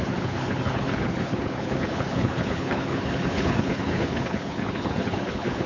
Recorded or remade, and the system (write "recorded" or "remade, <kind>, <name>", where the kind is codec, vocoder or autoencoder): remade, codec, HILCodec